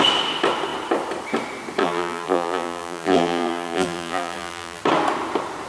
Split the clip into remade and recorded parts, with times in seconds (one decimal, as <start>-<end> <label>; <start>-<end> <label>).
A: 0.0-1.8 recorded; 1.8-4.8 remade; 4.8-5.7 recorded